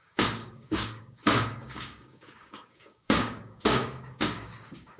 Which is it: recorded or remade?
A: remade